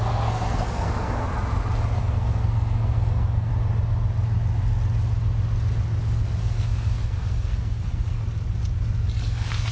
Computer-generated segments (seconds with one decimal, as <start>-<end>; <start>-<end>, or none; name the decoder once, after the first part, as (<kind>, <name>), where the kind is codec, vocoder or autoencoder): 0.0-1.3 (codec, SNAC); 2.0-3.5; 6.4-8.2; 9.2-9.7